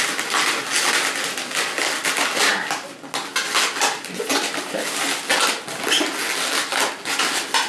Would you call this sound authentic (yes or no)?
yes